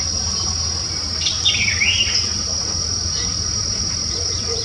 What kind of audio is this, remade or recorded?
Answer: recorded